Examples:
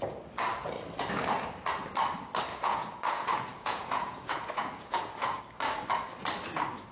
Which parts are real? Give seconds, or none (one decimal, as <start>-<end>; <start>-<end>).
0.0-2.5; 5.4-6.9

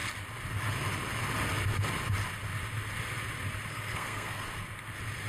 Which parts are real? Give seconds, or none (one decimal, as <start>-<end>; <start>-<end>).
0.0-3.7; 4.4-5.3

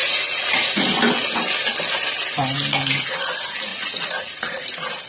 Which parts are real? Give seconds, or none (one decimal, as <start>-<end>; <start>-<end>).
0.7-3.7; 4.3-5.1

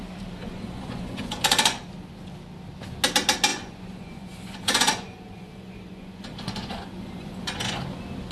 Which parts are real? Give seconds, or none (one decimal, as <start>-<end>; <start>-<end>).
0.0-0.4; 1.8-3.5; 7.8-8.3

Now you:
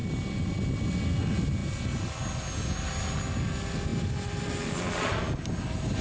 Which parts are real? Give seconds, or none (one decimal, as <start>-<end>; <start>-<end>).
0.0-6.0

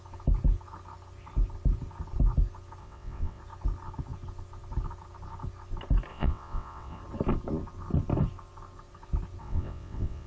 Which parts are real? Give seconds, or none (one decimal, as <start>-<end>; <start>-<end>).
0.0-2.8; 3.4-6.1; 7.0-9.4

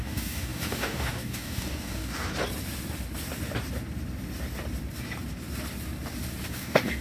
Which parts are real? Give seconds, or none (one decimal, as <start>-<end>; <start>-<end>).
2.3-6.5